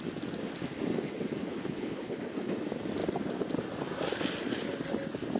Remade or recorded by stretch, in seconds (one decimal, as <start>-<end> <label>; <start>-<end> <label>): 0.0-1.4 recorded; 1.4-2.5 remade; 2.5-5.4 recorded